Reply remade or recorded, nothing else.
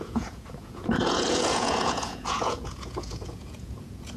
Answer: remade